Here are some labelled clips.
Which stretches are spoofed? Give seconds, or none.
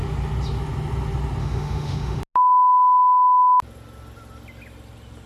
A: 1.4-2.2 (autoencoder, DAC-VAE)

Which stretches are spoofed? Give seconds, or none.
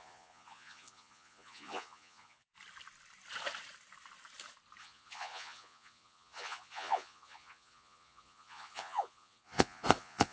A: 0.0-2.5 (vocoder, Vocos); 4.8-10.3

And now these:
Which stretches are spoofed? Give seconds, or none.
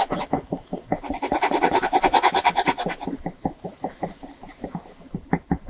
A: 1.3-4.7 (vocoder, BigVGAN v2)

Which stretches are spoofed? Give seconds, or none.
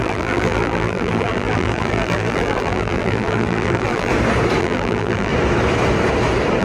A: 0.0-4.1 (vocoder, BigVGAN v2); 4.6-5.3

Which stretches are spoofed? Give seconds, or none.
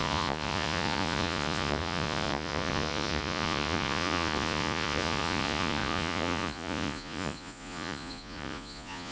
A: 0.0-9.1 (vocoder, Vocos)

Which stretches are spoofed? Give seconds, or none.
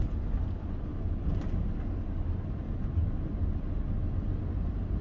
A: none